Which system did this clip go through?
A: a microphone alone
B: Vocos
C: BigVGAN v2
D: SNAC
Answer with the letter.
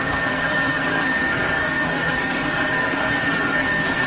D